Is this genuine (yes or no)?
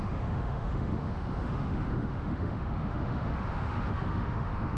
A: no